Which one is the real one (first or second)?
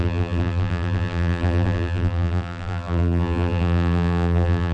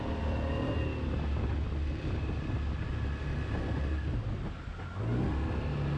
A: second